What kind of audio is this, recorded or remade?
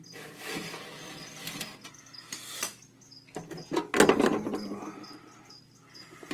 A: recorded